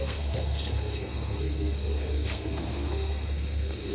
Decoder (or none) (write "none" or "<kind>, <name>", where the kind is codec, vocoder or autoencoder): codec, SNAC